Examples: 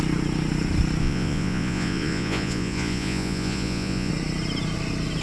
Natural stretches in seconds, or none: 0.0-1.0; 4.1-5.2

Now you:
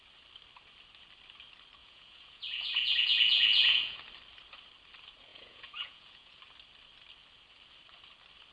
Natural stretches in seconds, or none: 0.0-1.8; 4.0-5.3; 6.4-8.5

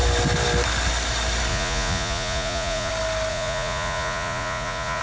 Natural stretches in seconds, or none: 0.0-1.5; 2.9-3.3

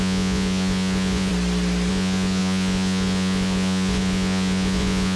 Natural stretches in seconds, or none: 1.3-1.9